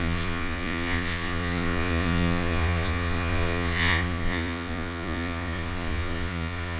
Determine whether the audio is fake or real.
fake